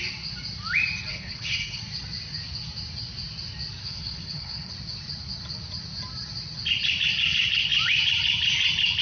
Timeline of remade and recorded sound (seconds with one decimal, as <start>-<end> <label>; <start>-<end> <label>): 0.0-1.1 recorded; 1.1-1.8 remade; 1.8-3.8 recorded; 3.8-4.7 remade; 4.7-9.0 recorded